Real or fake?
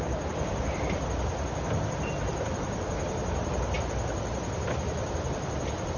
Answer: real